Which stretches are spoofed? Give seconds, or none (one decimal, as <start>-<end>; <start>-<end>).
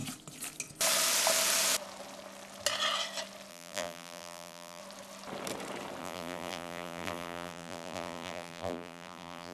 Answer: 3.5-4.8; 6.0-9.5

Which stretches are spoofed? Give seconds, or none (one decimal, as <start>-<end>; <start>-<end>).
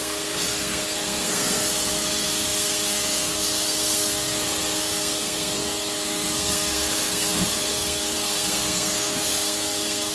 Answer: 0.0-10.1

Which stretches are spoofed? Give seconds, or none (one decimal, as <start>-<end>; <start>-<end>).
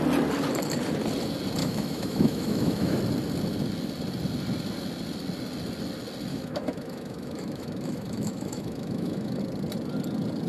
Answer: 1.6-3.0; 6.3-9.4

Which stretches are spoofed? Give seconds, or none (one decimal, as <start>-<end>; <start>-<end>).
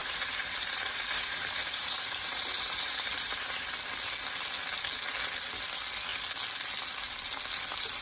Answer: 0.0-3.7